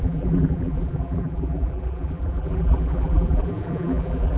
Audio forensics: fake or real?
fake